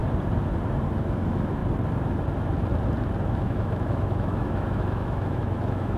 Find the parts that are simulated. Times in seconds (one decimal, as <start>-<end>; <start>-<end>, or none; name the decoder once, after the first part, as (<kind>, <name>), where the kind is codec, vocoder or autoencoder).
1.0-1.6 (autoencoder, DAC-VAE); 3.2-6.0